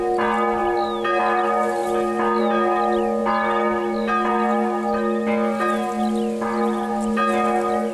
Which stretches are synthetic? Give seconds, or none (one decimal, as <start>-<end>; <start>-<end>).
none